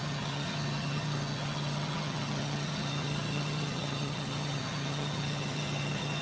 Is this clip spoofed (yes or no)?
yes